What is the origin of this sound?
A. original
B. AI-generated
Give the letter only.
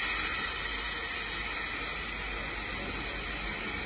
A